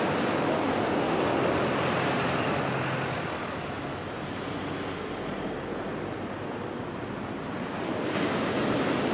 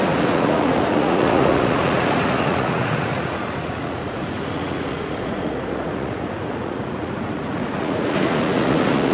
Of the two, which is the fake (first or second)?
second